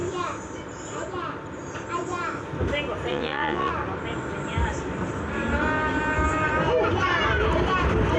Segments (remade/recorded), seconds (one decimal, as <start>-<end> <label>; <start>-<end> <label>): 0.0-3.1 recorded; 3.1-3.7 remade; 3.7-8.2 recorded